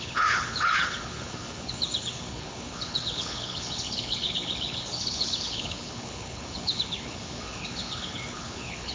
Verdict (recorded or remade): remade